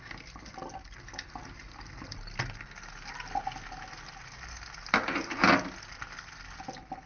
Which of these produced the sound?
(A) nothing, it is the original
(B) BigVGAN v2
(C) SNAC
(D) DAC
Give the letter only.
A